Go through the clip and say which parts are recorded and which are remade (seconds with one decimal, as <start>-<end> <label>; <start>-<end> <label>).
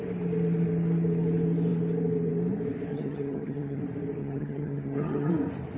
0.0-2.9 recorded; 2.9-3.8 remade; 3.8-4.2 recorded; 4.2-5.3 remade; 5.3-5.8 recorded